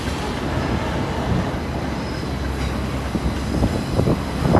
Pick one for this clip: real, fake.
real